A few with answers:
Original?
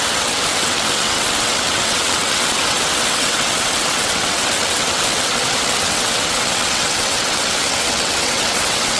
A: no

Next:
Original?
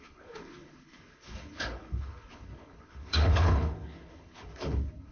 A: no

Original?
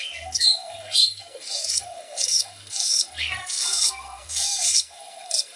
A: no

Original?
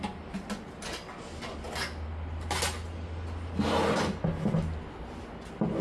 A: yes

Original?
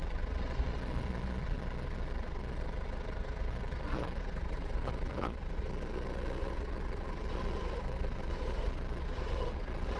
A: no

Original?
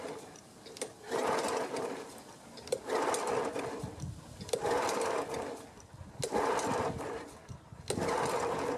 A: yes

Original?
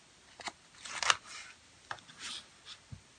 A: yes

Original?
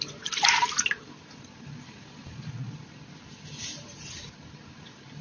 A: yes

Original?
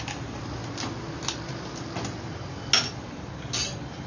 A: yes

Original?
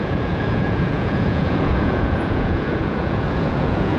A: no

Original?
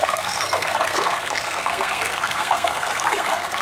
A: no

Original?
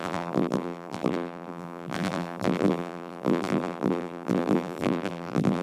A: no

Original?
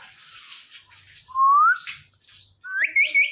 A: yes